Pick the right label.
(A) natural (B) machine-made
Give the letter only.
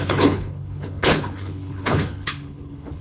B